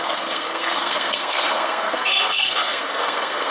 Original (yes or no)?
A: no